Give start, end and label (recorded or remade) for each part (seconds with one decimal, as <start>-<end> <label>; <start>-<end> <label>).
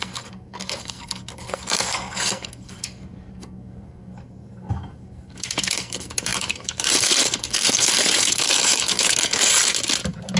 0.0-9.5 remade; 9.5-10.4 recorded